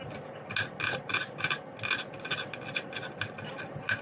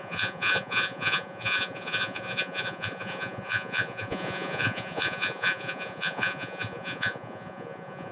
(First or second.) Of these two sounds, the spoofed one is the second